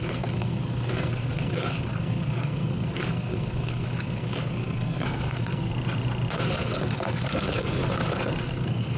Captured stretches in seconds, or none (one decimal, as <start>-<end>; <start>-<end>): 5.7-6.3; 7.8-8.4